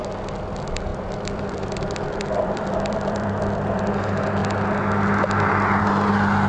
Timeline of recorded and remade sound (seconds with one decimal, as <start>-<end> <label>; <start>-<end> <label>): 0.0-0.9 recorded; 0.9-3.4 remade; 3.4-6.5 recorded